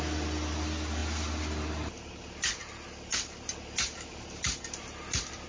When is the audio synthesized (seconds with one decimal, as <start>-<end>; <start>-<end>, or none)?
none